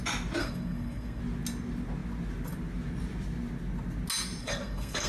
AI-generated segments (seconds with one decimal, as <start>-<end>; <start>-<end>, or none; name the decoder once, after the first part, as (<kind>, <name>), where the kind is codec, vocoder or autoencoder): 0.4-1.2 (codec, SNAC); 4.4-5.1